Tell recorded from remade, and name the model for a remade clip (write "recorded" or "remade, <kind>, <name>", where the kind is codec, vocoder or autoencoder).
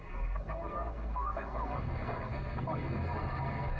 remade, codec, SNAC